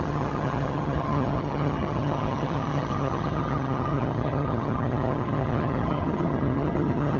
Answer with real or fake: fake